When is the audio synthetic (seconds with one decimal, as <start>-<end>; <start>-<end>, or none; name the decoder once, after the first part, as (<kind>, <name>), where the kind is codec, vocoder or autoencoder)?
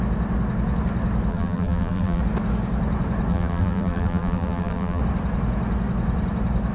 1.3-2.2 (vocoder, BigVGAN v2); 3.3-5.0